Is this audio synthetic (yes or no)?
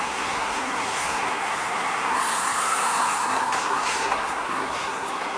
yes